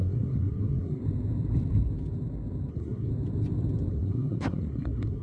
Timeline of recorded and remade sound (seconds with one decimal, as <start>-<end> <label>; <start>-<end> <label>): 0.0-1.0 remade; 1.0-2.7 recorded; 2.7-3.1 remade; 3.1-3.9 recorded; 3.9-5.2 remade